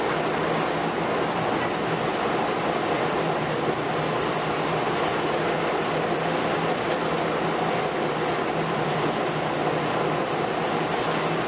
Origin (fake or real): real